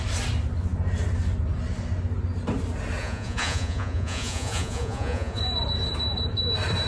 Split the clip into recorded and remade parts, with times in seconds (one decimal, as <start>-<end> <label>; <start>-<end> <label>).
0.0-3.0 recorded; 3.0-5.4 remade; 5.4-6.9 recorded